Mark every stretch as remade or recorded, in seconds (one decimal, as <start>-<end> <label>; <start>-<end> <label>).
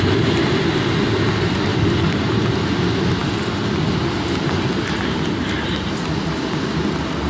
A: 0.0-1.7 recorded; 1.7-2.7 remade; 2.7-7.3 recorded